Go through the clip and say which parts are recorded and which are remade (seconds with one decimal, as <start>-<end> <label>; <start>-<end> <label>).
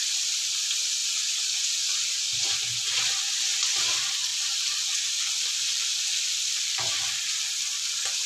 0.0-4.3 recorded; 4.3-7.9 remade; 7.9-8.3 recorded